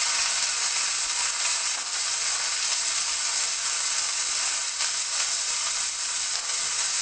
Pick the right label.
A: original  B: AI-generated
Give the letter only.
A